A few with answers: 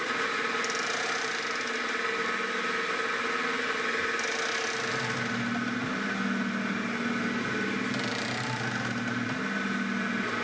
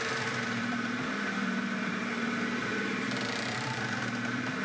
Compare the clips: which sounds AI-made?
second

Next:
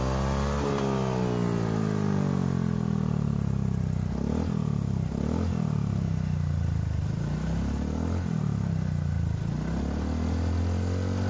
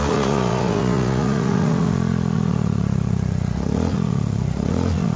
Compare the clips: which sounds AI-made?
second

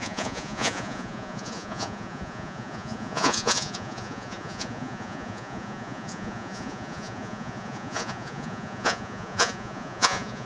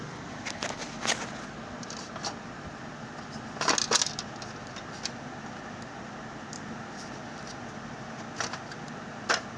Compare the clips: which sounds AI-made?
first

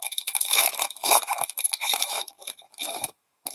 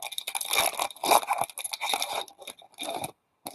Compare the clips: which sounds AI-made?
first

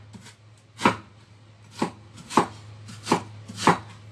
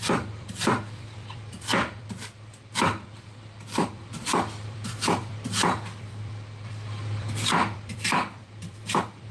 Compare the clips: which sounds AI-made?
second